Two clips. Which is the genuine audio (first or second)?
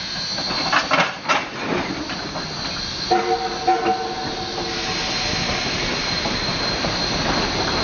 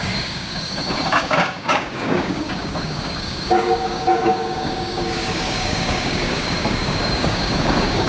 first